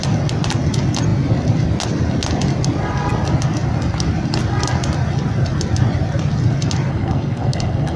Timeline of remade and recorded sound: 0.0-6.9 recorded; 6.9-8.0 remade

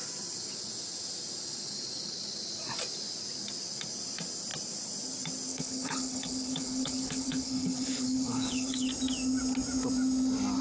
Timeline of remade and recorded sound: 0.0-5.5 recorded; 5.5-8.9 remade; 8.9-10.6 recorded

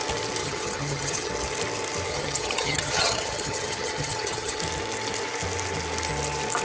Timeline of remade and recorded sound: 0.0-0.4 recorded; 0.4-1.3 remade; 1.3-2.1 recorded; 2.1-4.6 remade; 4.6-6.6 recorded

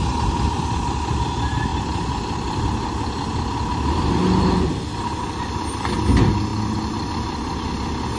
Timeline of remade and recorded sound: 0.0-8.2 recorded

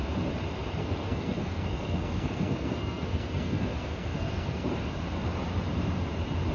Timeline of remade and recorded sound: 0.0-0.8 recorded; 0.8-4.7 remade; 4.7-6.5 recorded

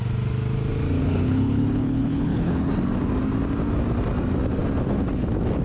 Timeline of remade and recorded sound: 0.0-1.0 recorded; 1.0-2.7 remade; 2.7-5.6 recorded

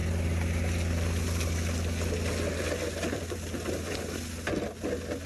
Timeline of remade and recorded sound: 0.0-5.3 recorded